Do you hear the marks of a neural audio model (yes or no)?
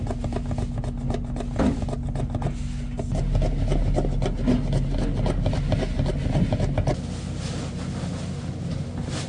no